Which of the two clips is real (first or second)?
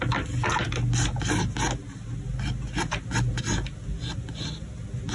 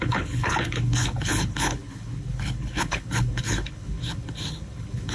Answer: first